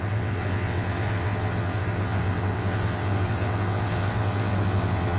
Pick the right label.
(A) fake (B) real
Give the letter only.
A